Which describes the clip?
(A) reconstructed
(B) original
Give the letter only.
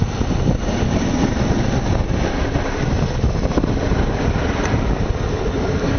B